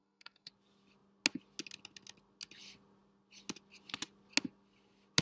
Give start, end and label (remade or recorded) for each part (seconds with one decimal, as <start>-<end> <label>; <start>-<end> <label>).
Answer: 0.0-0.5 remade; 0.5-5.2 recorded